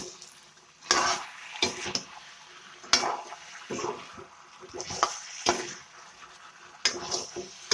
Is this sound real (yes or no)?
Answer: yes